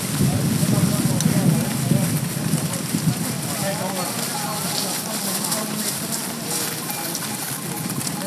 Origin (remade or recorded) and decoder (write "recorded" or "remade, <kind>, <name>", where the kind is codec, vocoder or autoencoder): recorded